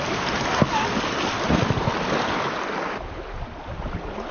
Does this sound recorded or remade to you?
recorded